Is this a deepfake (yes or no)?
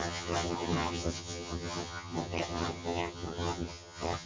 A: yes